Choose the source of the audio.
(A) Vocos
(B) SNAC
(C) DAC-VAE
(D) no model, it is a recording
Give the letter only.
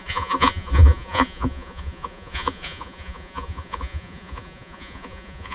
A